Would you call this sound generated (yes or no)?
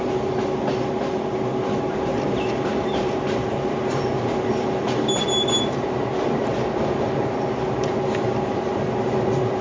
no